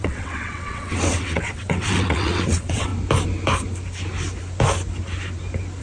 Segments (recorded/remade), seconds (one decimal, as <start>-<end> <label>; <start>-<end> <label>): 0.0-2.9 remade; 2.9-5.8 recorded